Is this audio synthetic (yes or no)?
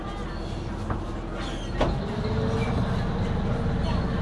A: no